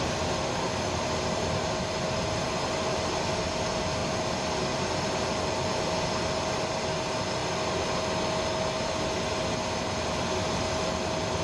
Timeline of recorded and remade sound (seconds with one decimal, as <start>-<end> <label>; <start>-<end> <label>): 0.0-11.4 recorded